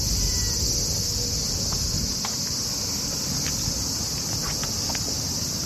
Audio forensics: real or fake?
real